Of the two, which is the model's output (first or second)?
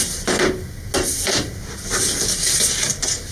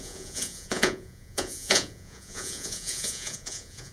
second